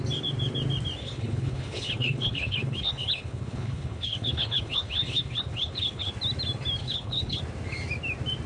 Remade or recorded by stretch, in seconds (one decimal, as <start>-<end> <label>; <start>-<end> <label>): 0.0-1.0 recorded; 1.0-6.1 remade; 6.1-6.8 recorded; 6.8-7.4 remade; 7.4-8.5 recorded